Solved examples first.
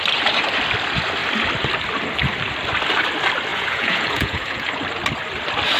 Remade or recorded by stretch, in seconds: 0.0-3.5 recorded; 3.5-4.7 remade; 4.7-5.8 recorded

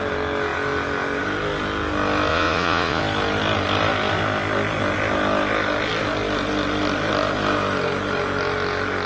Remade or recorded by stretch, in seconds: 0.0-2.3 recorded; 2.3-3.0 remade; 3.0-9.1 recorded